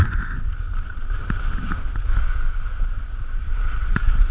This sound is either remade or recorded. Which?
recorded